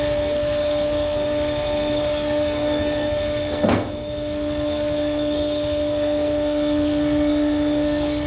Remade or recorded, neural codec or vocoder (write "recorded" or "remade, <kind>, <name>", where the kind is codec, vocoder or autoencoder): remade, codec, SNAC